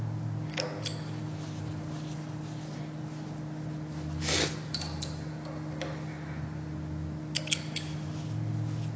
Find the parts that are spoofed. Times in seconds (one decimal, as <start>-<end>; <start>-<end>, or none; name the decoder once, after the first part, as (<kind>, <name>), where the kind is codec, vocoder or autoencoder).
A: none